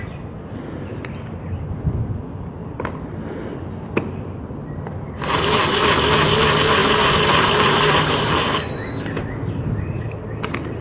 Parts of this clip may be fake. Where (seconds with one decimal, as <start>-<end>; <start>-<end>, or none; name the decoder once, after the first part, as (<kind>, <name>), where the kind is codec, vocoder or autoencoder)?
6.8-8.9 (vocoder, BigVGAN v2)